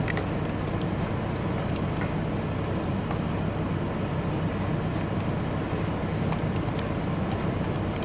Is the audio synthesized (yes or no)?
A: no